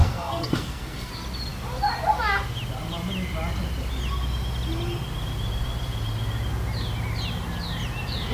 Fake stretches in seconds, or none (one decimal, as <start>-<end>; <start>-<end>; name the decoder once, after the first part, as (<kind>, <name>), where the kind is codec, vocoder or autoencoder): 0.0-1.1 (codec, SNAC)